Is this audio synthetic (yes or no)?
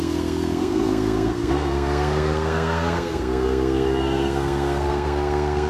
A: yes